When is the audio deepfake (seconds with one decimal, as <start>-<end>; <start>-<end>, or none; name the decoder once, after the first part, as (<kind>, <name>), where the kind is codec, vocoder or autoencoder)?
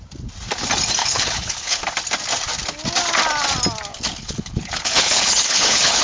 1.0-1.8 (codec, HILCodec); 3.9-6.0